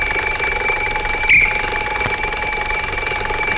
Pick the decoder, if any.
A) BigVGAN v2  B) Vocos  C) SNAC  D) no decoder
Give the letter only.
D